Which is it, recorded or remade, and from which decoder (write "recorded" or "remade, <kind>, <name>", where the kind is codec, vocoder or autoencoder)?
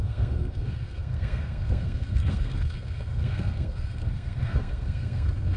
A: remade, codec, SNAC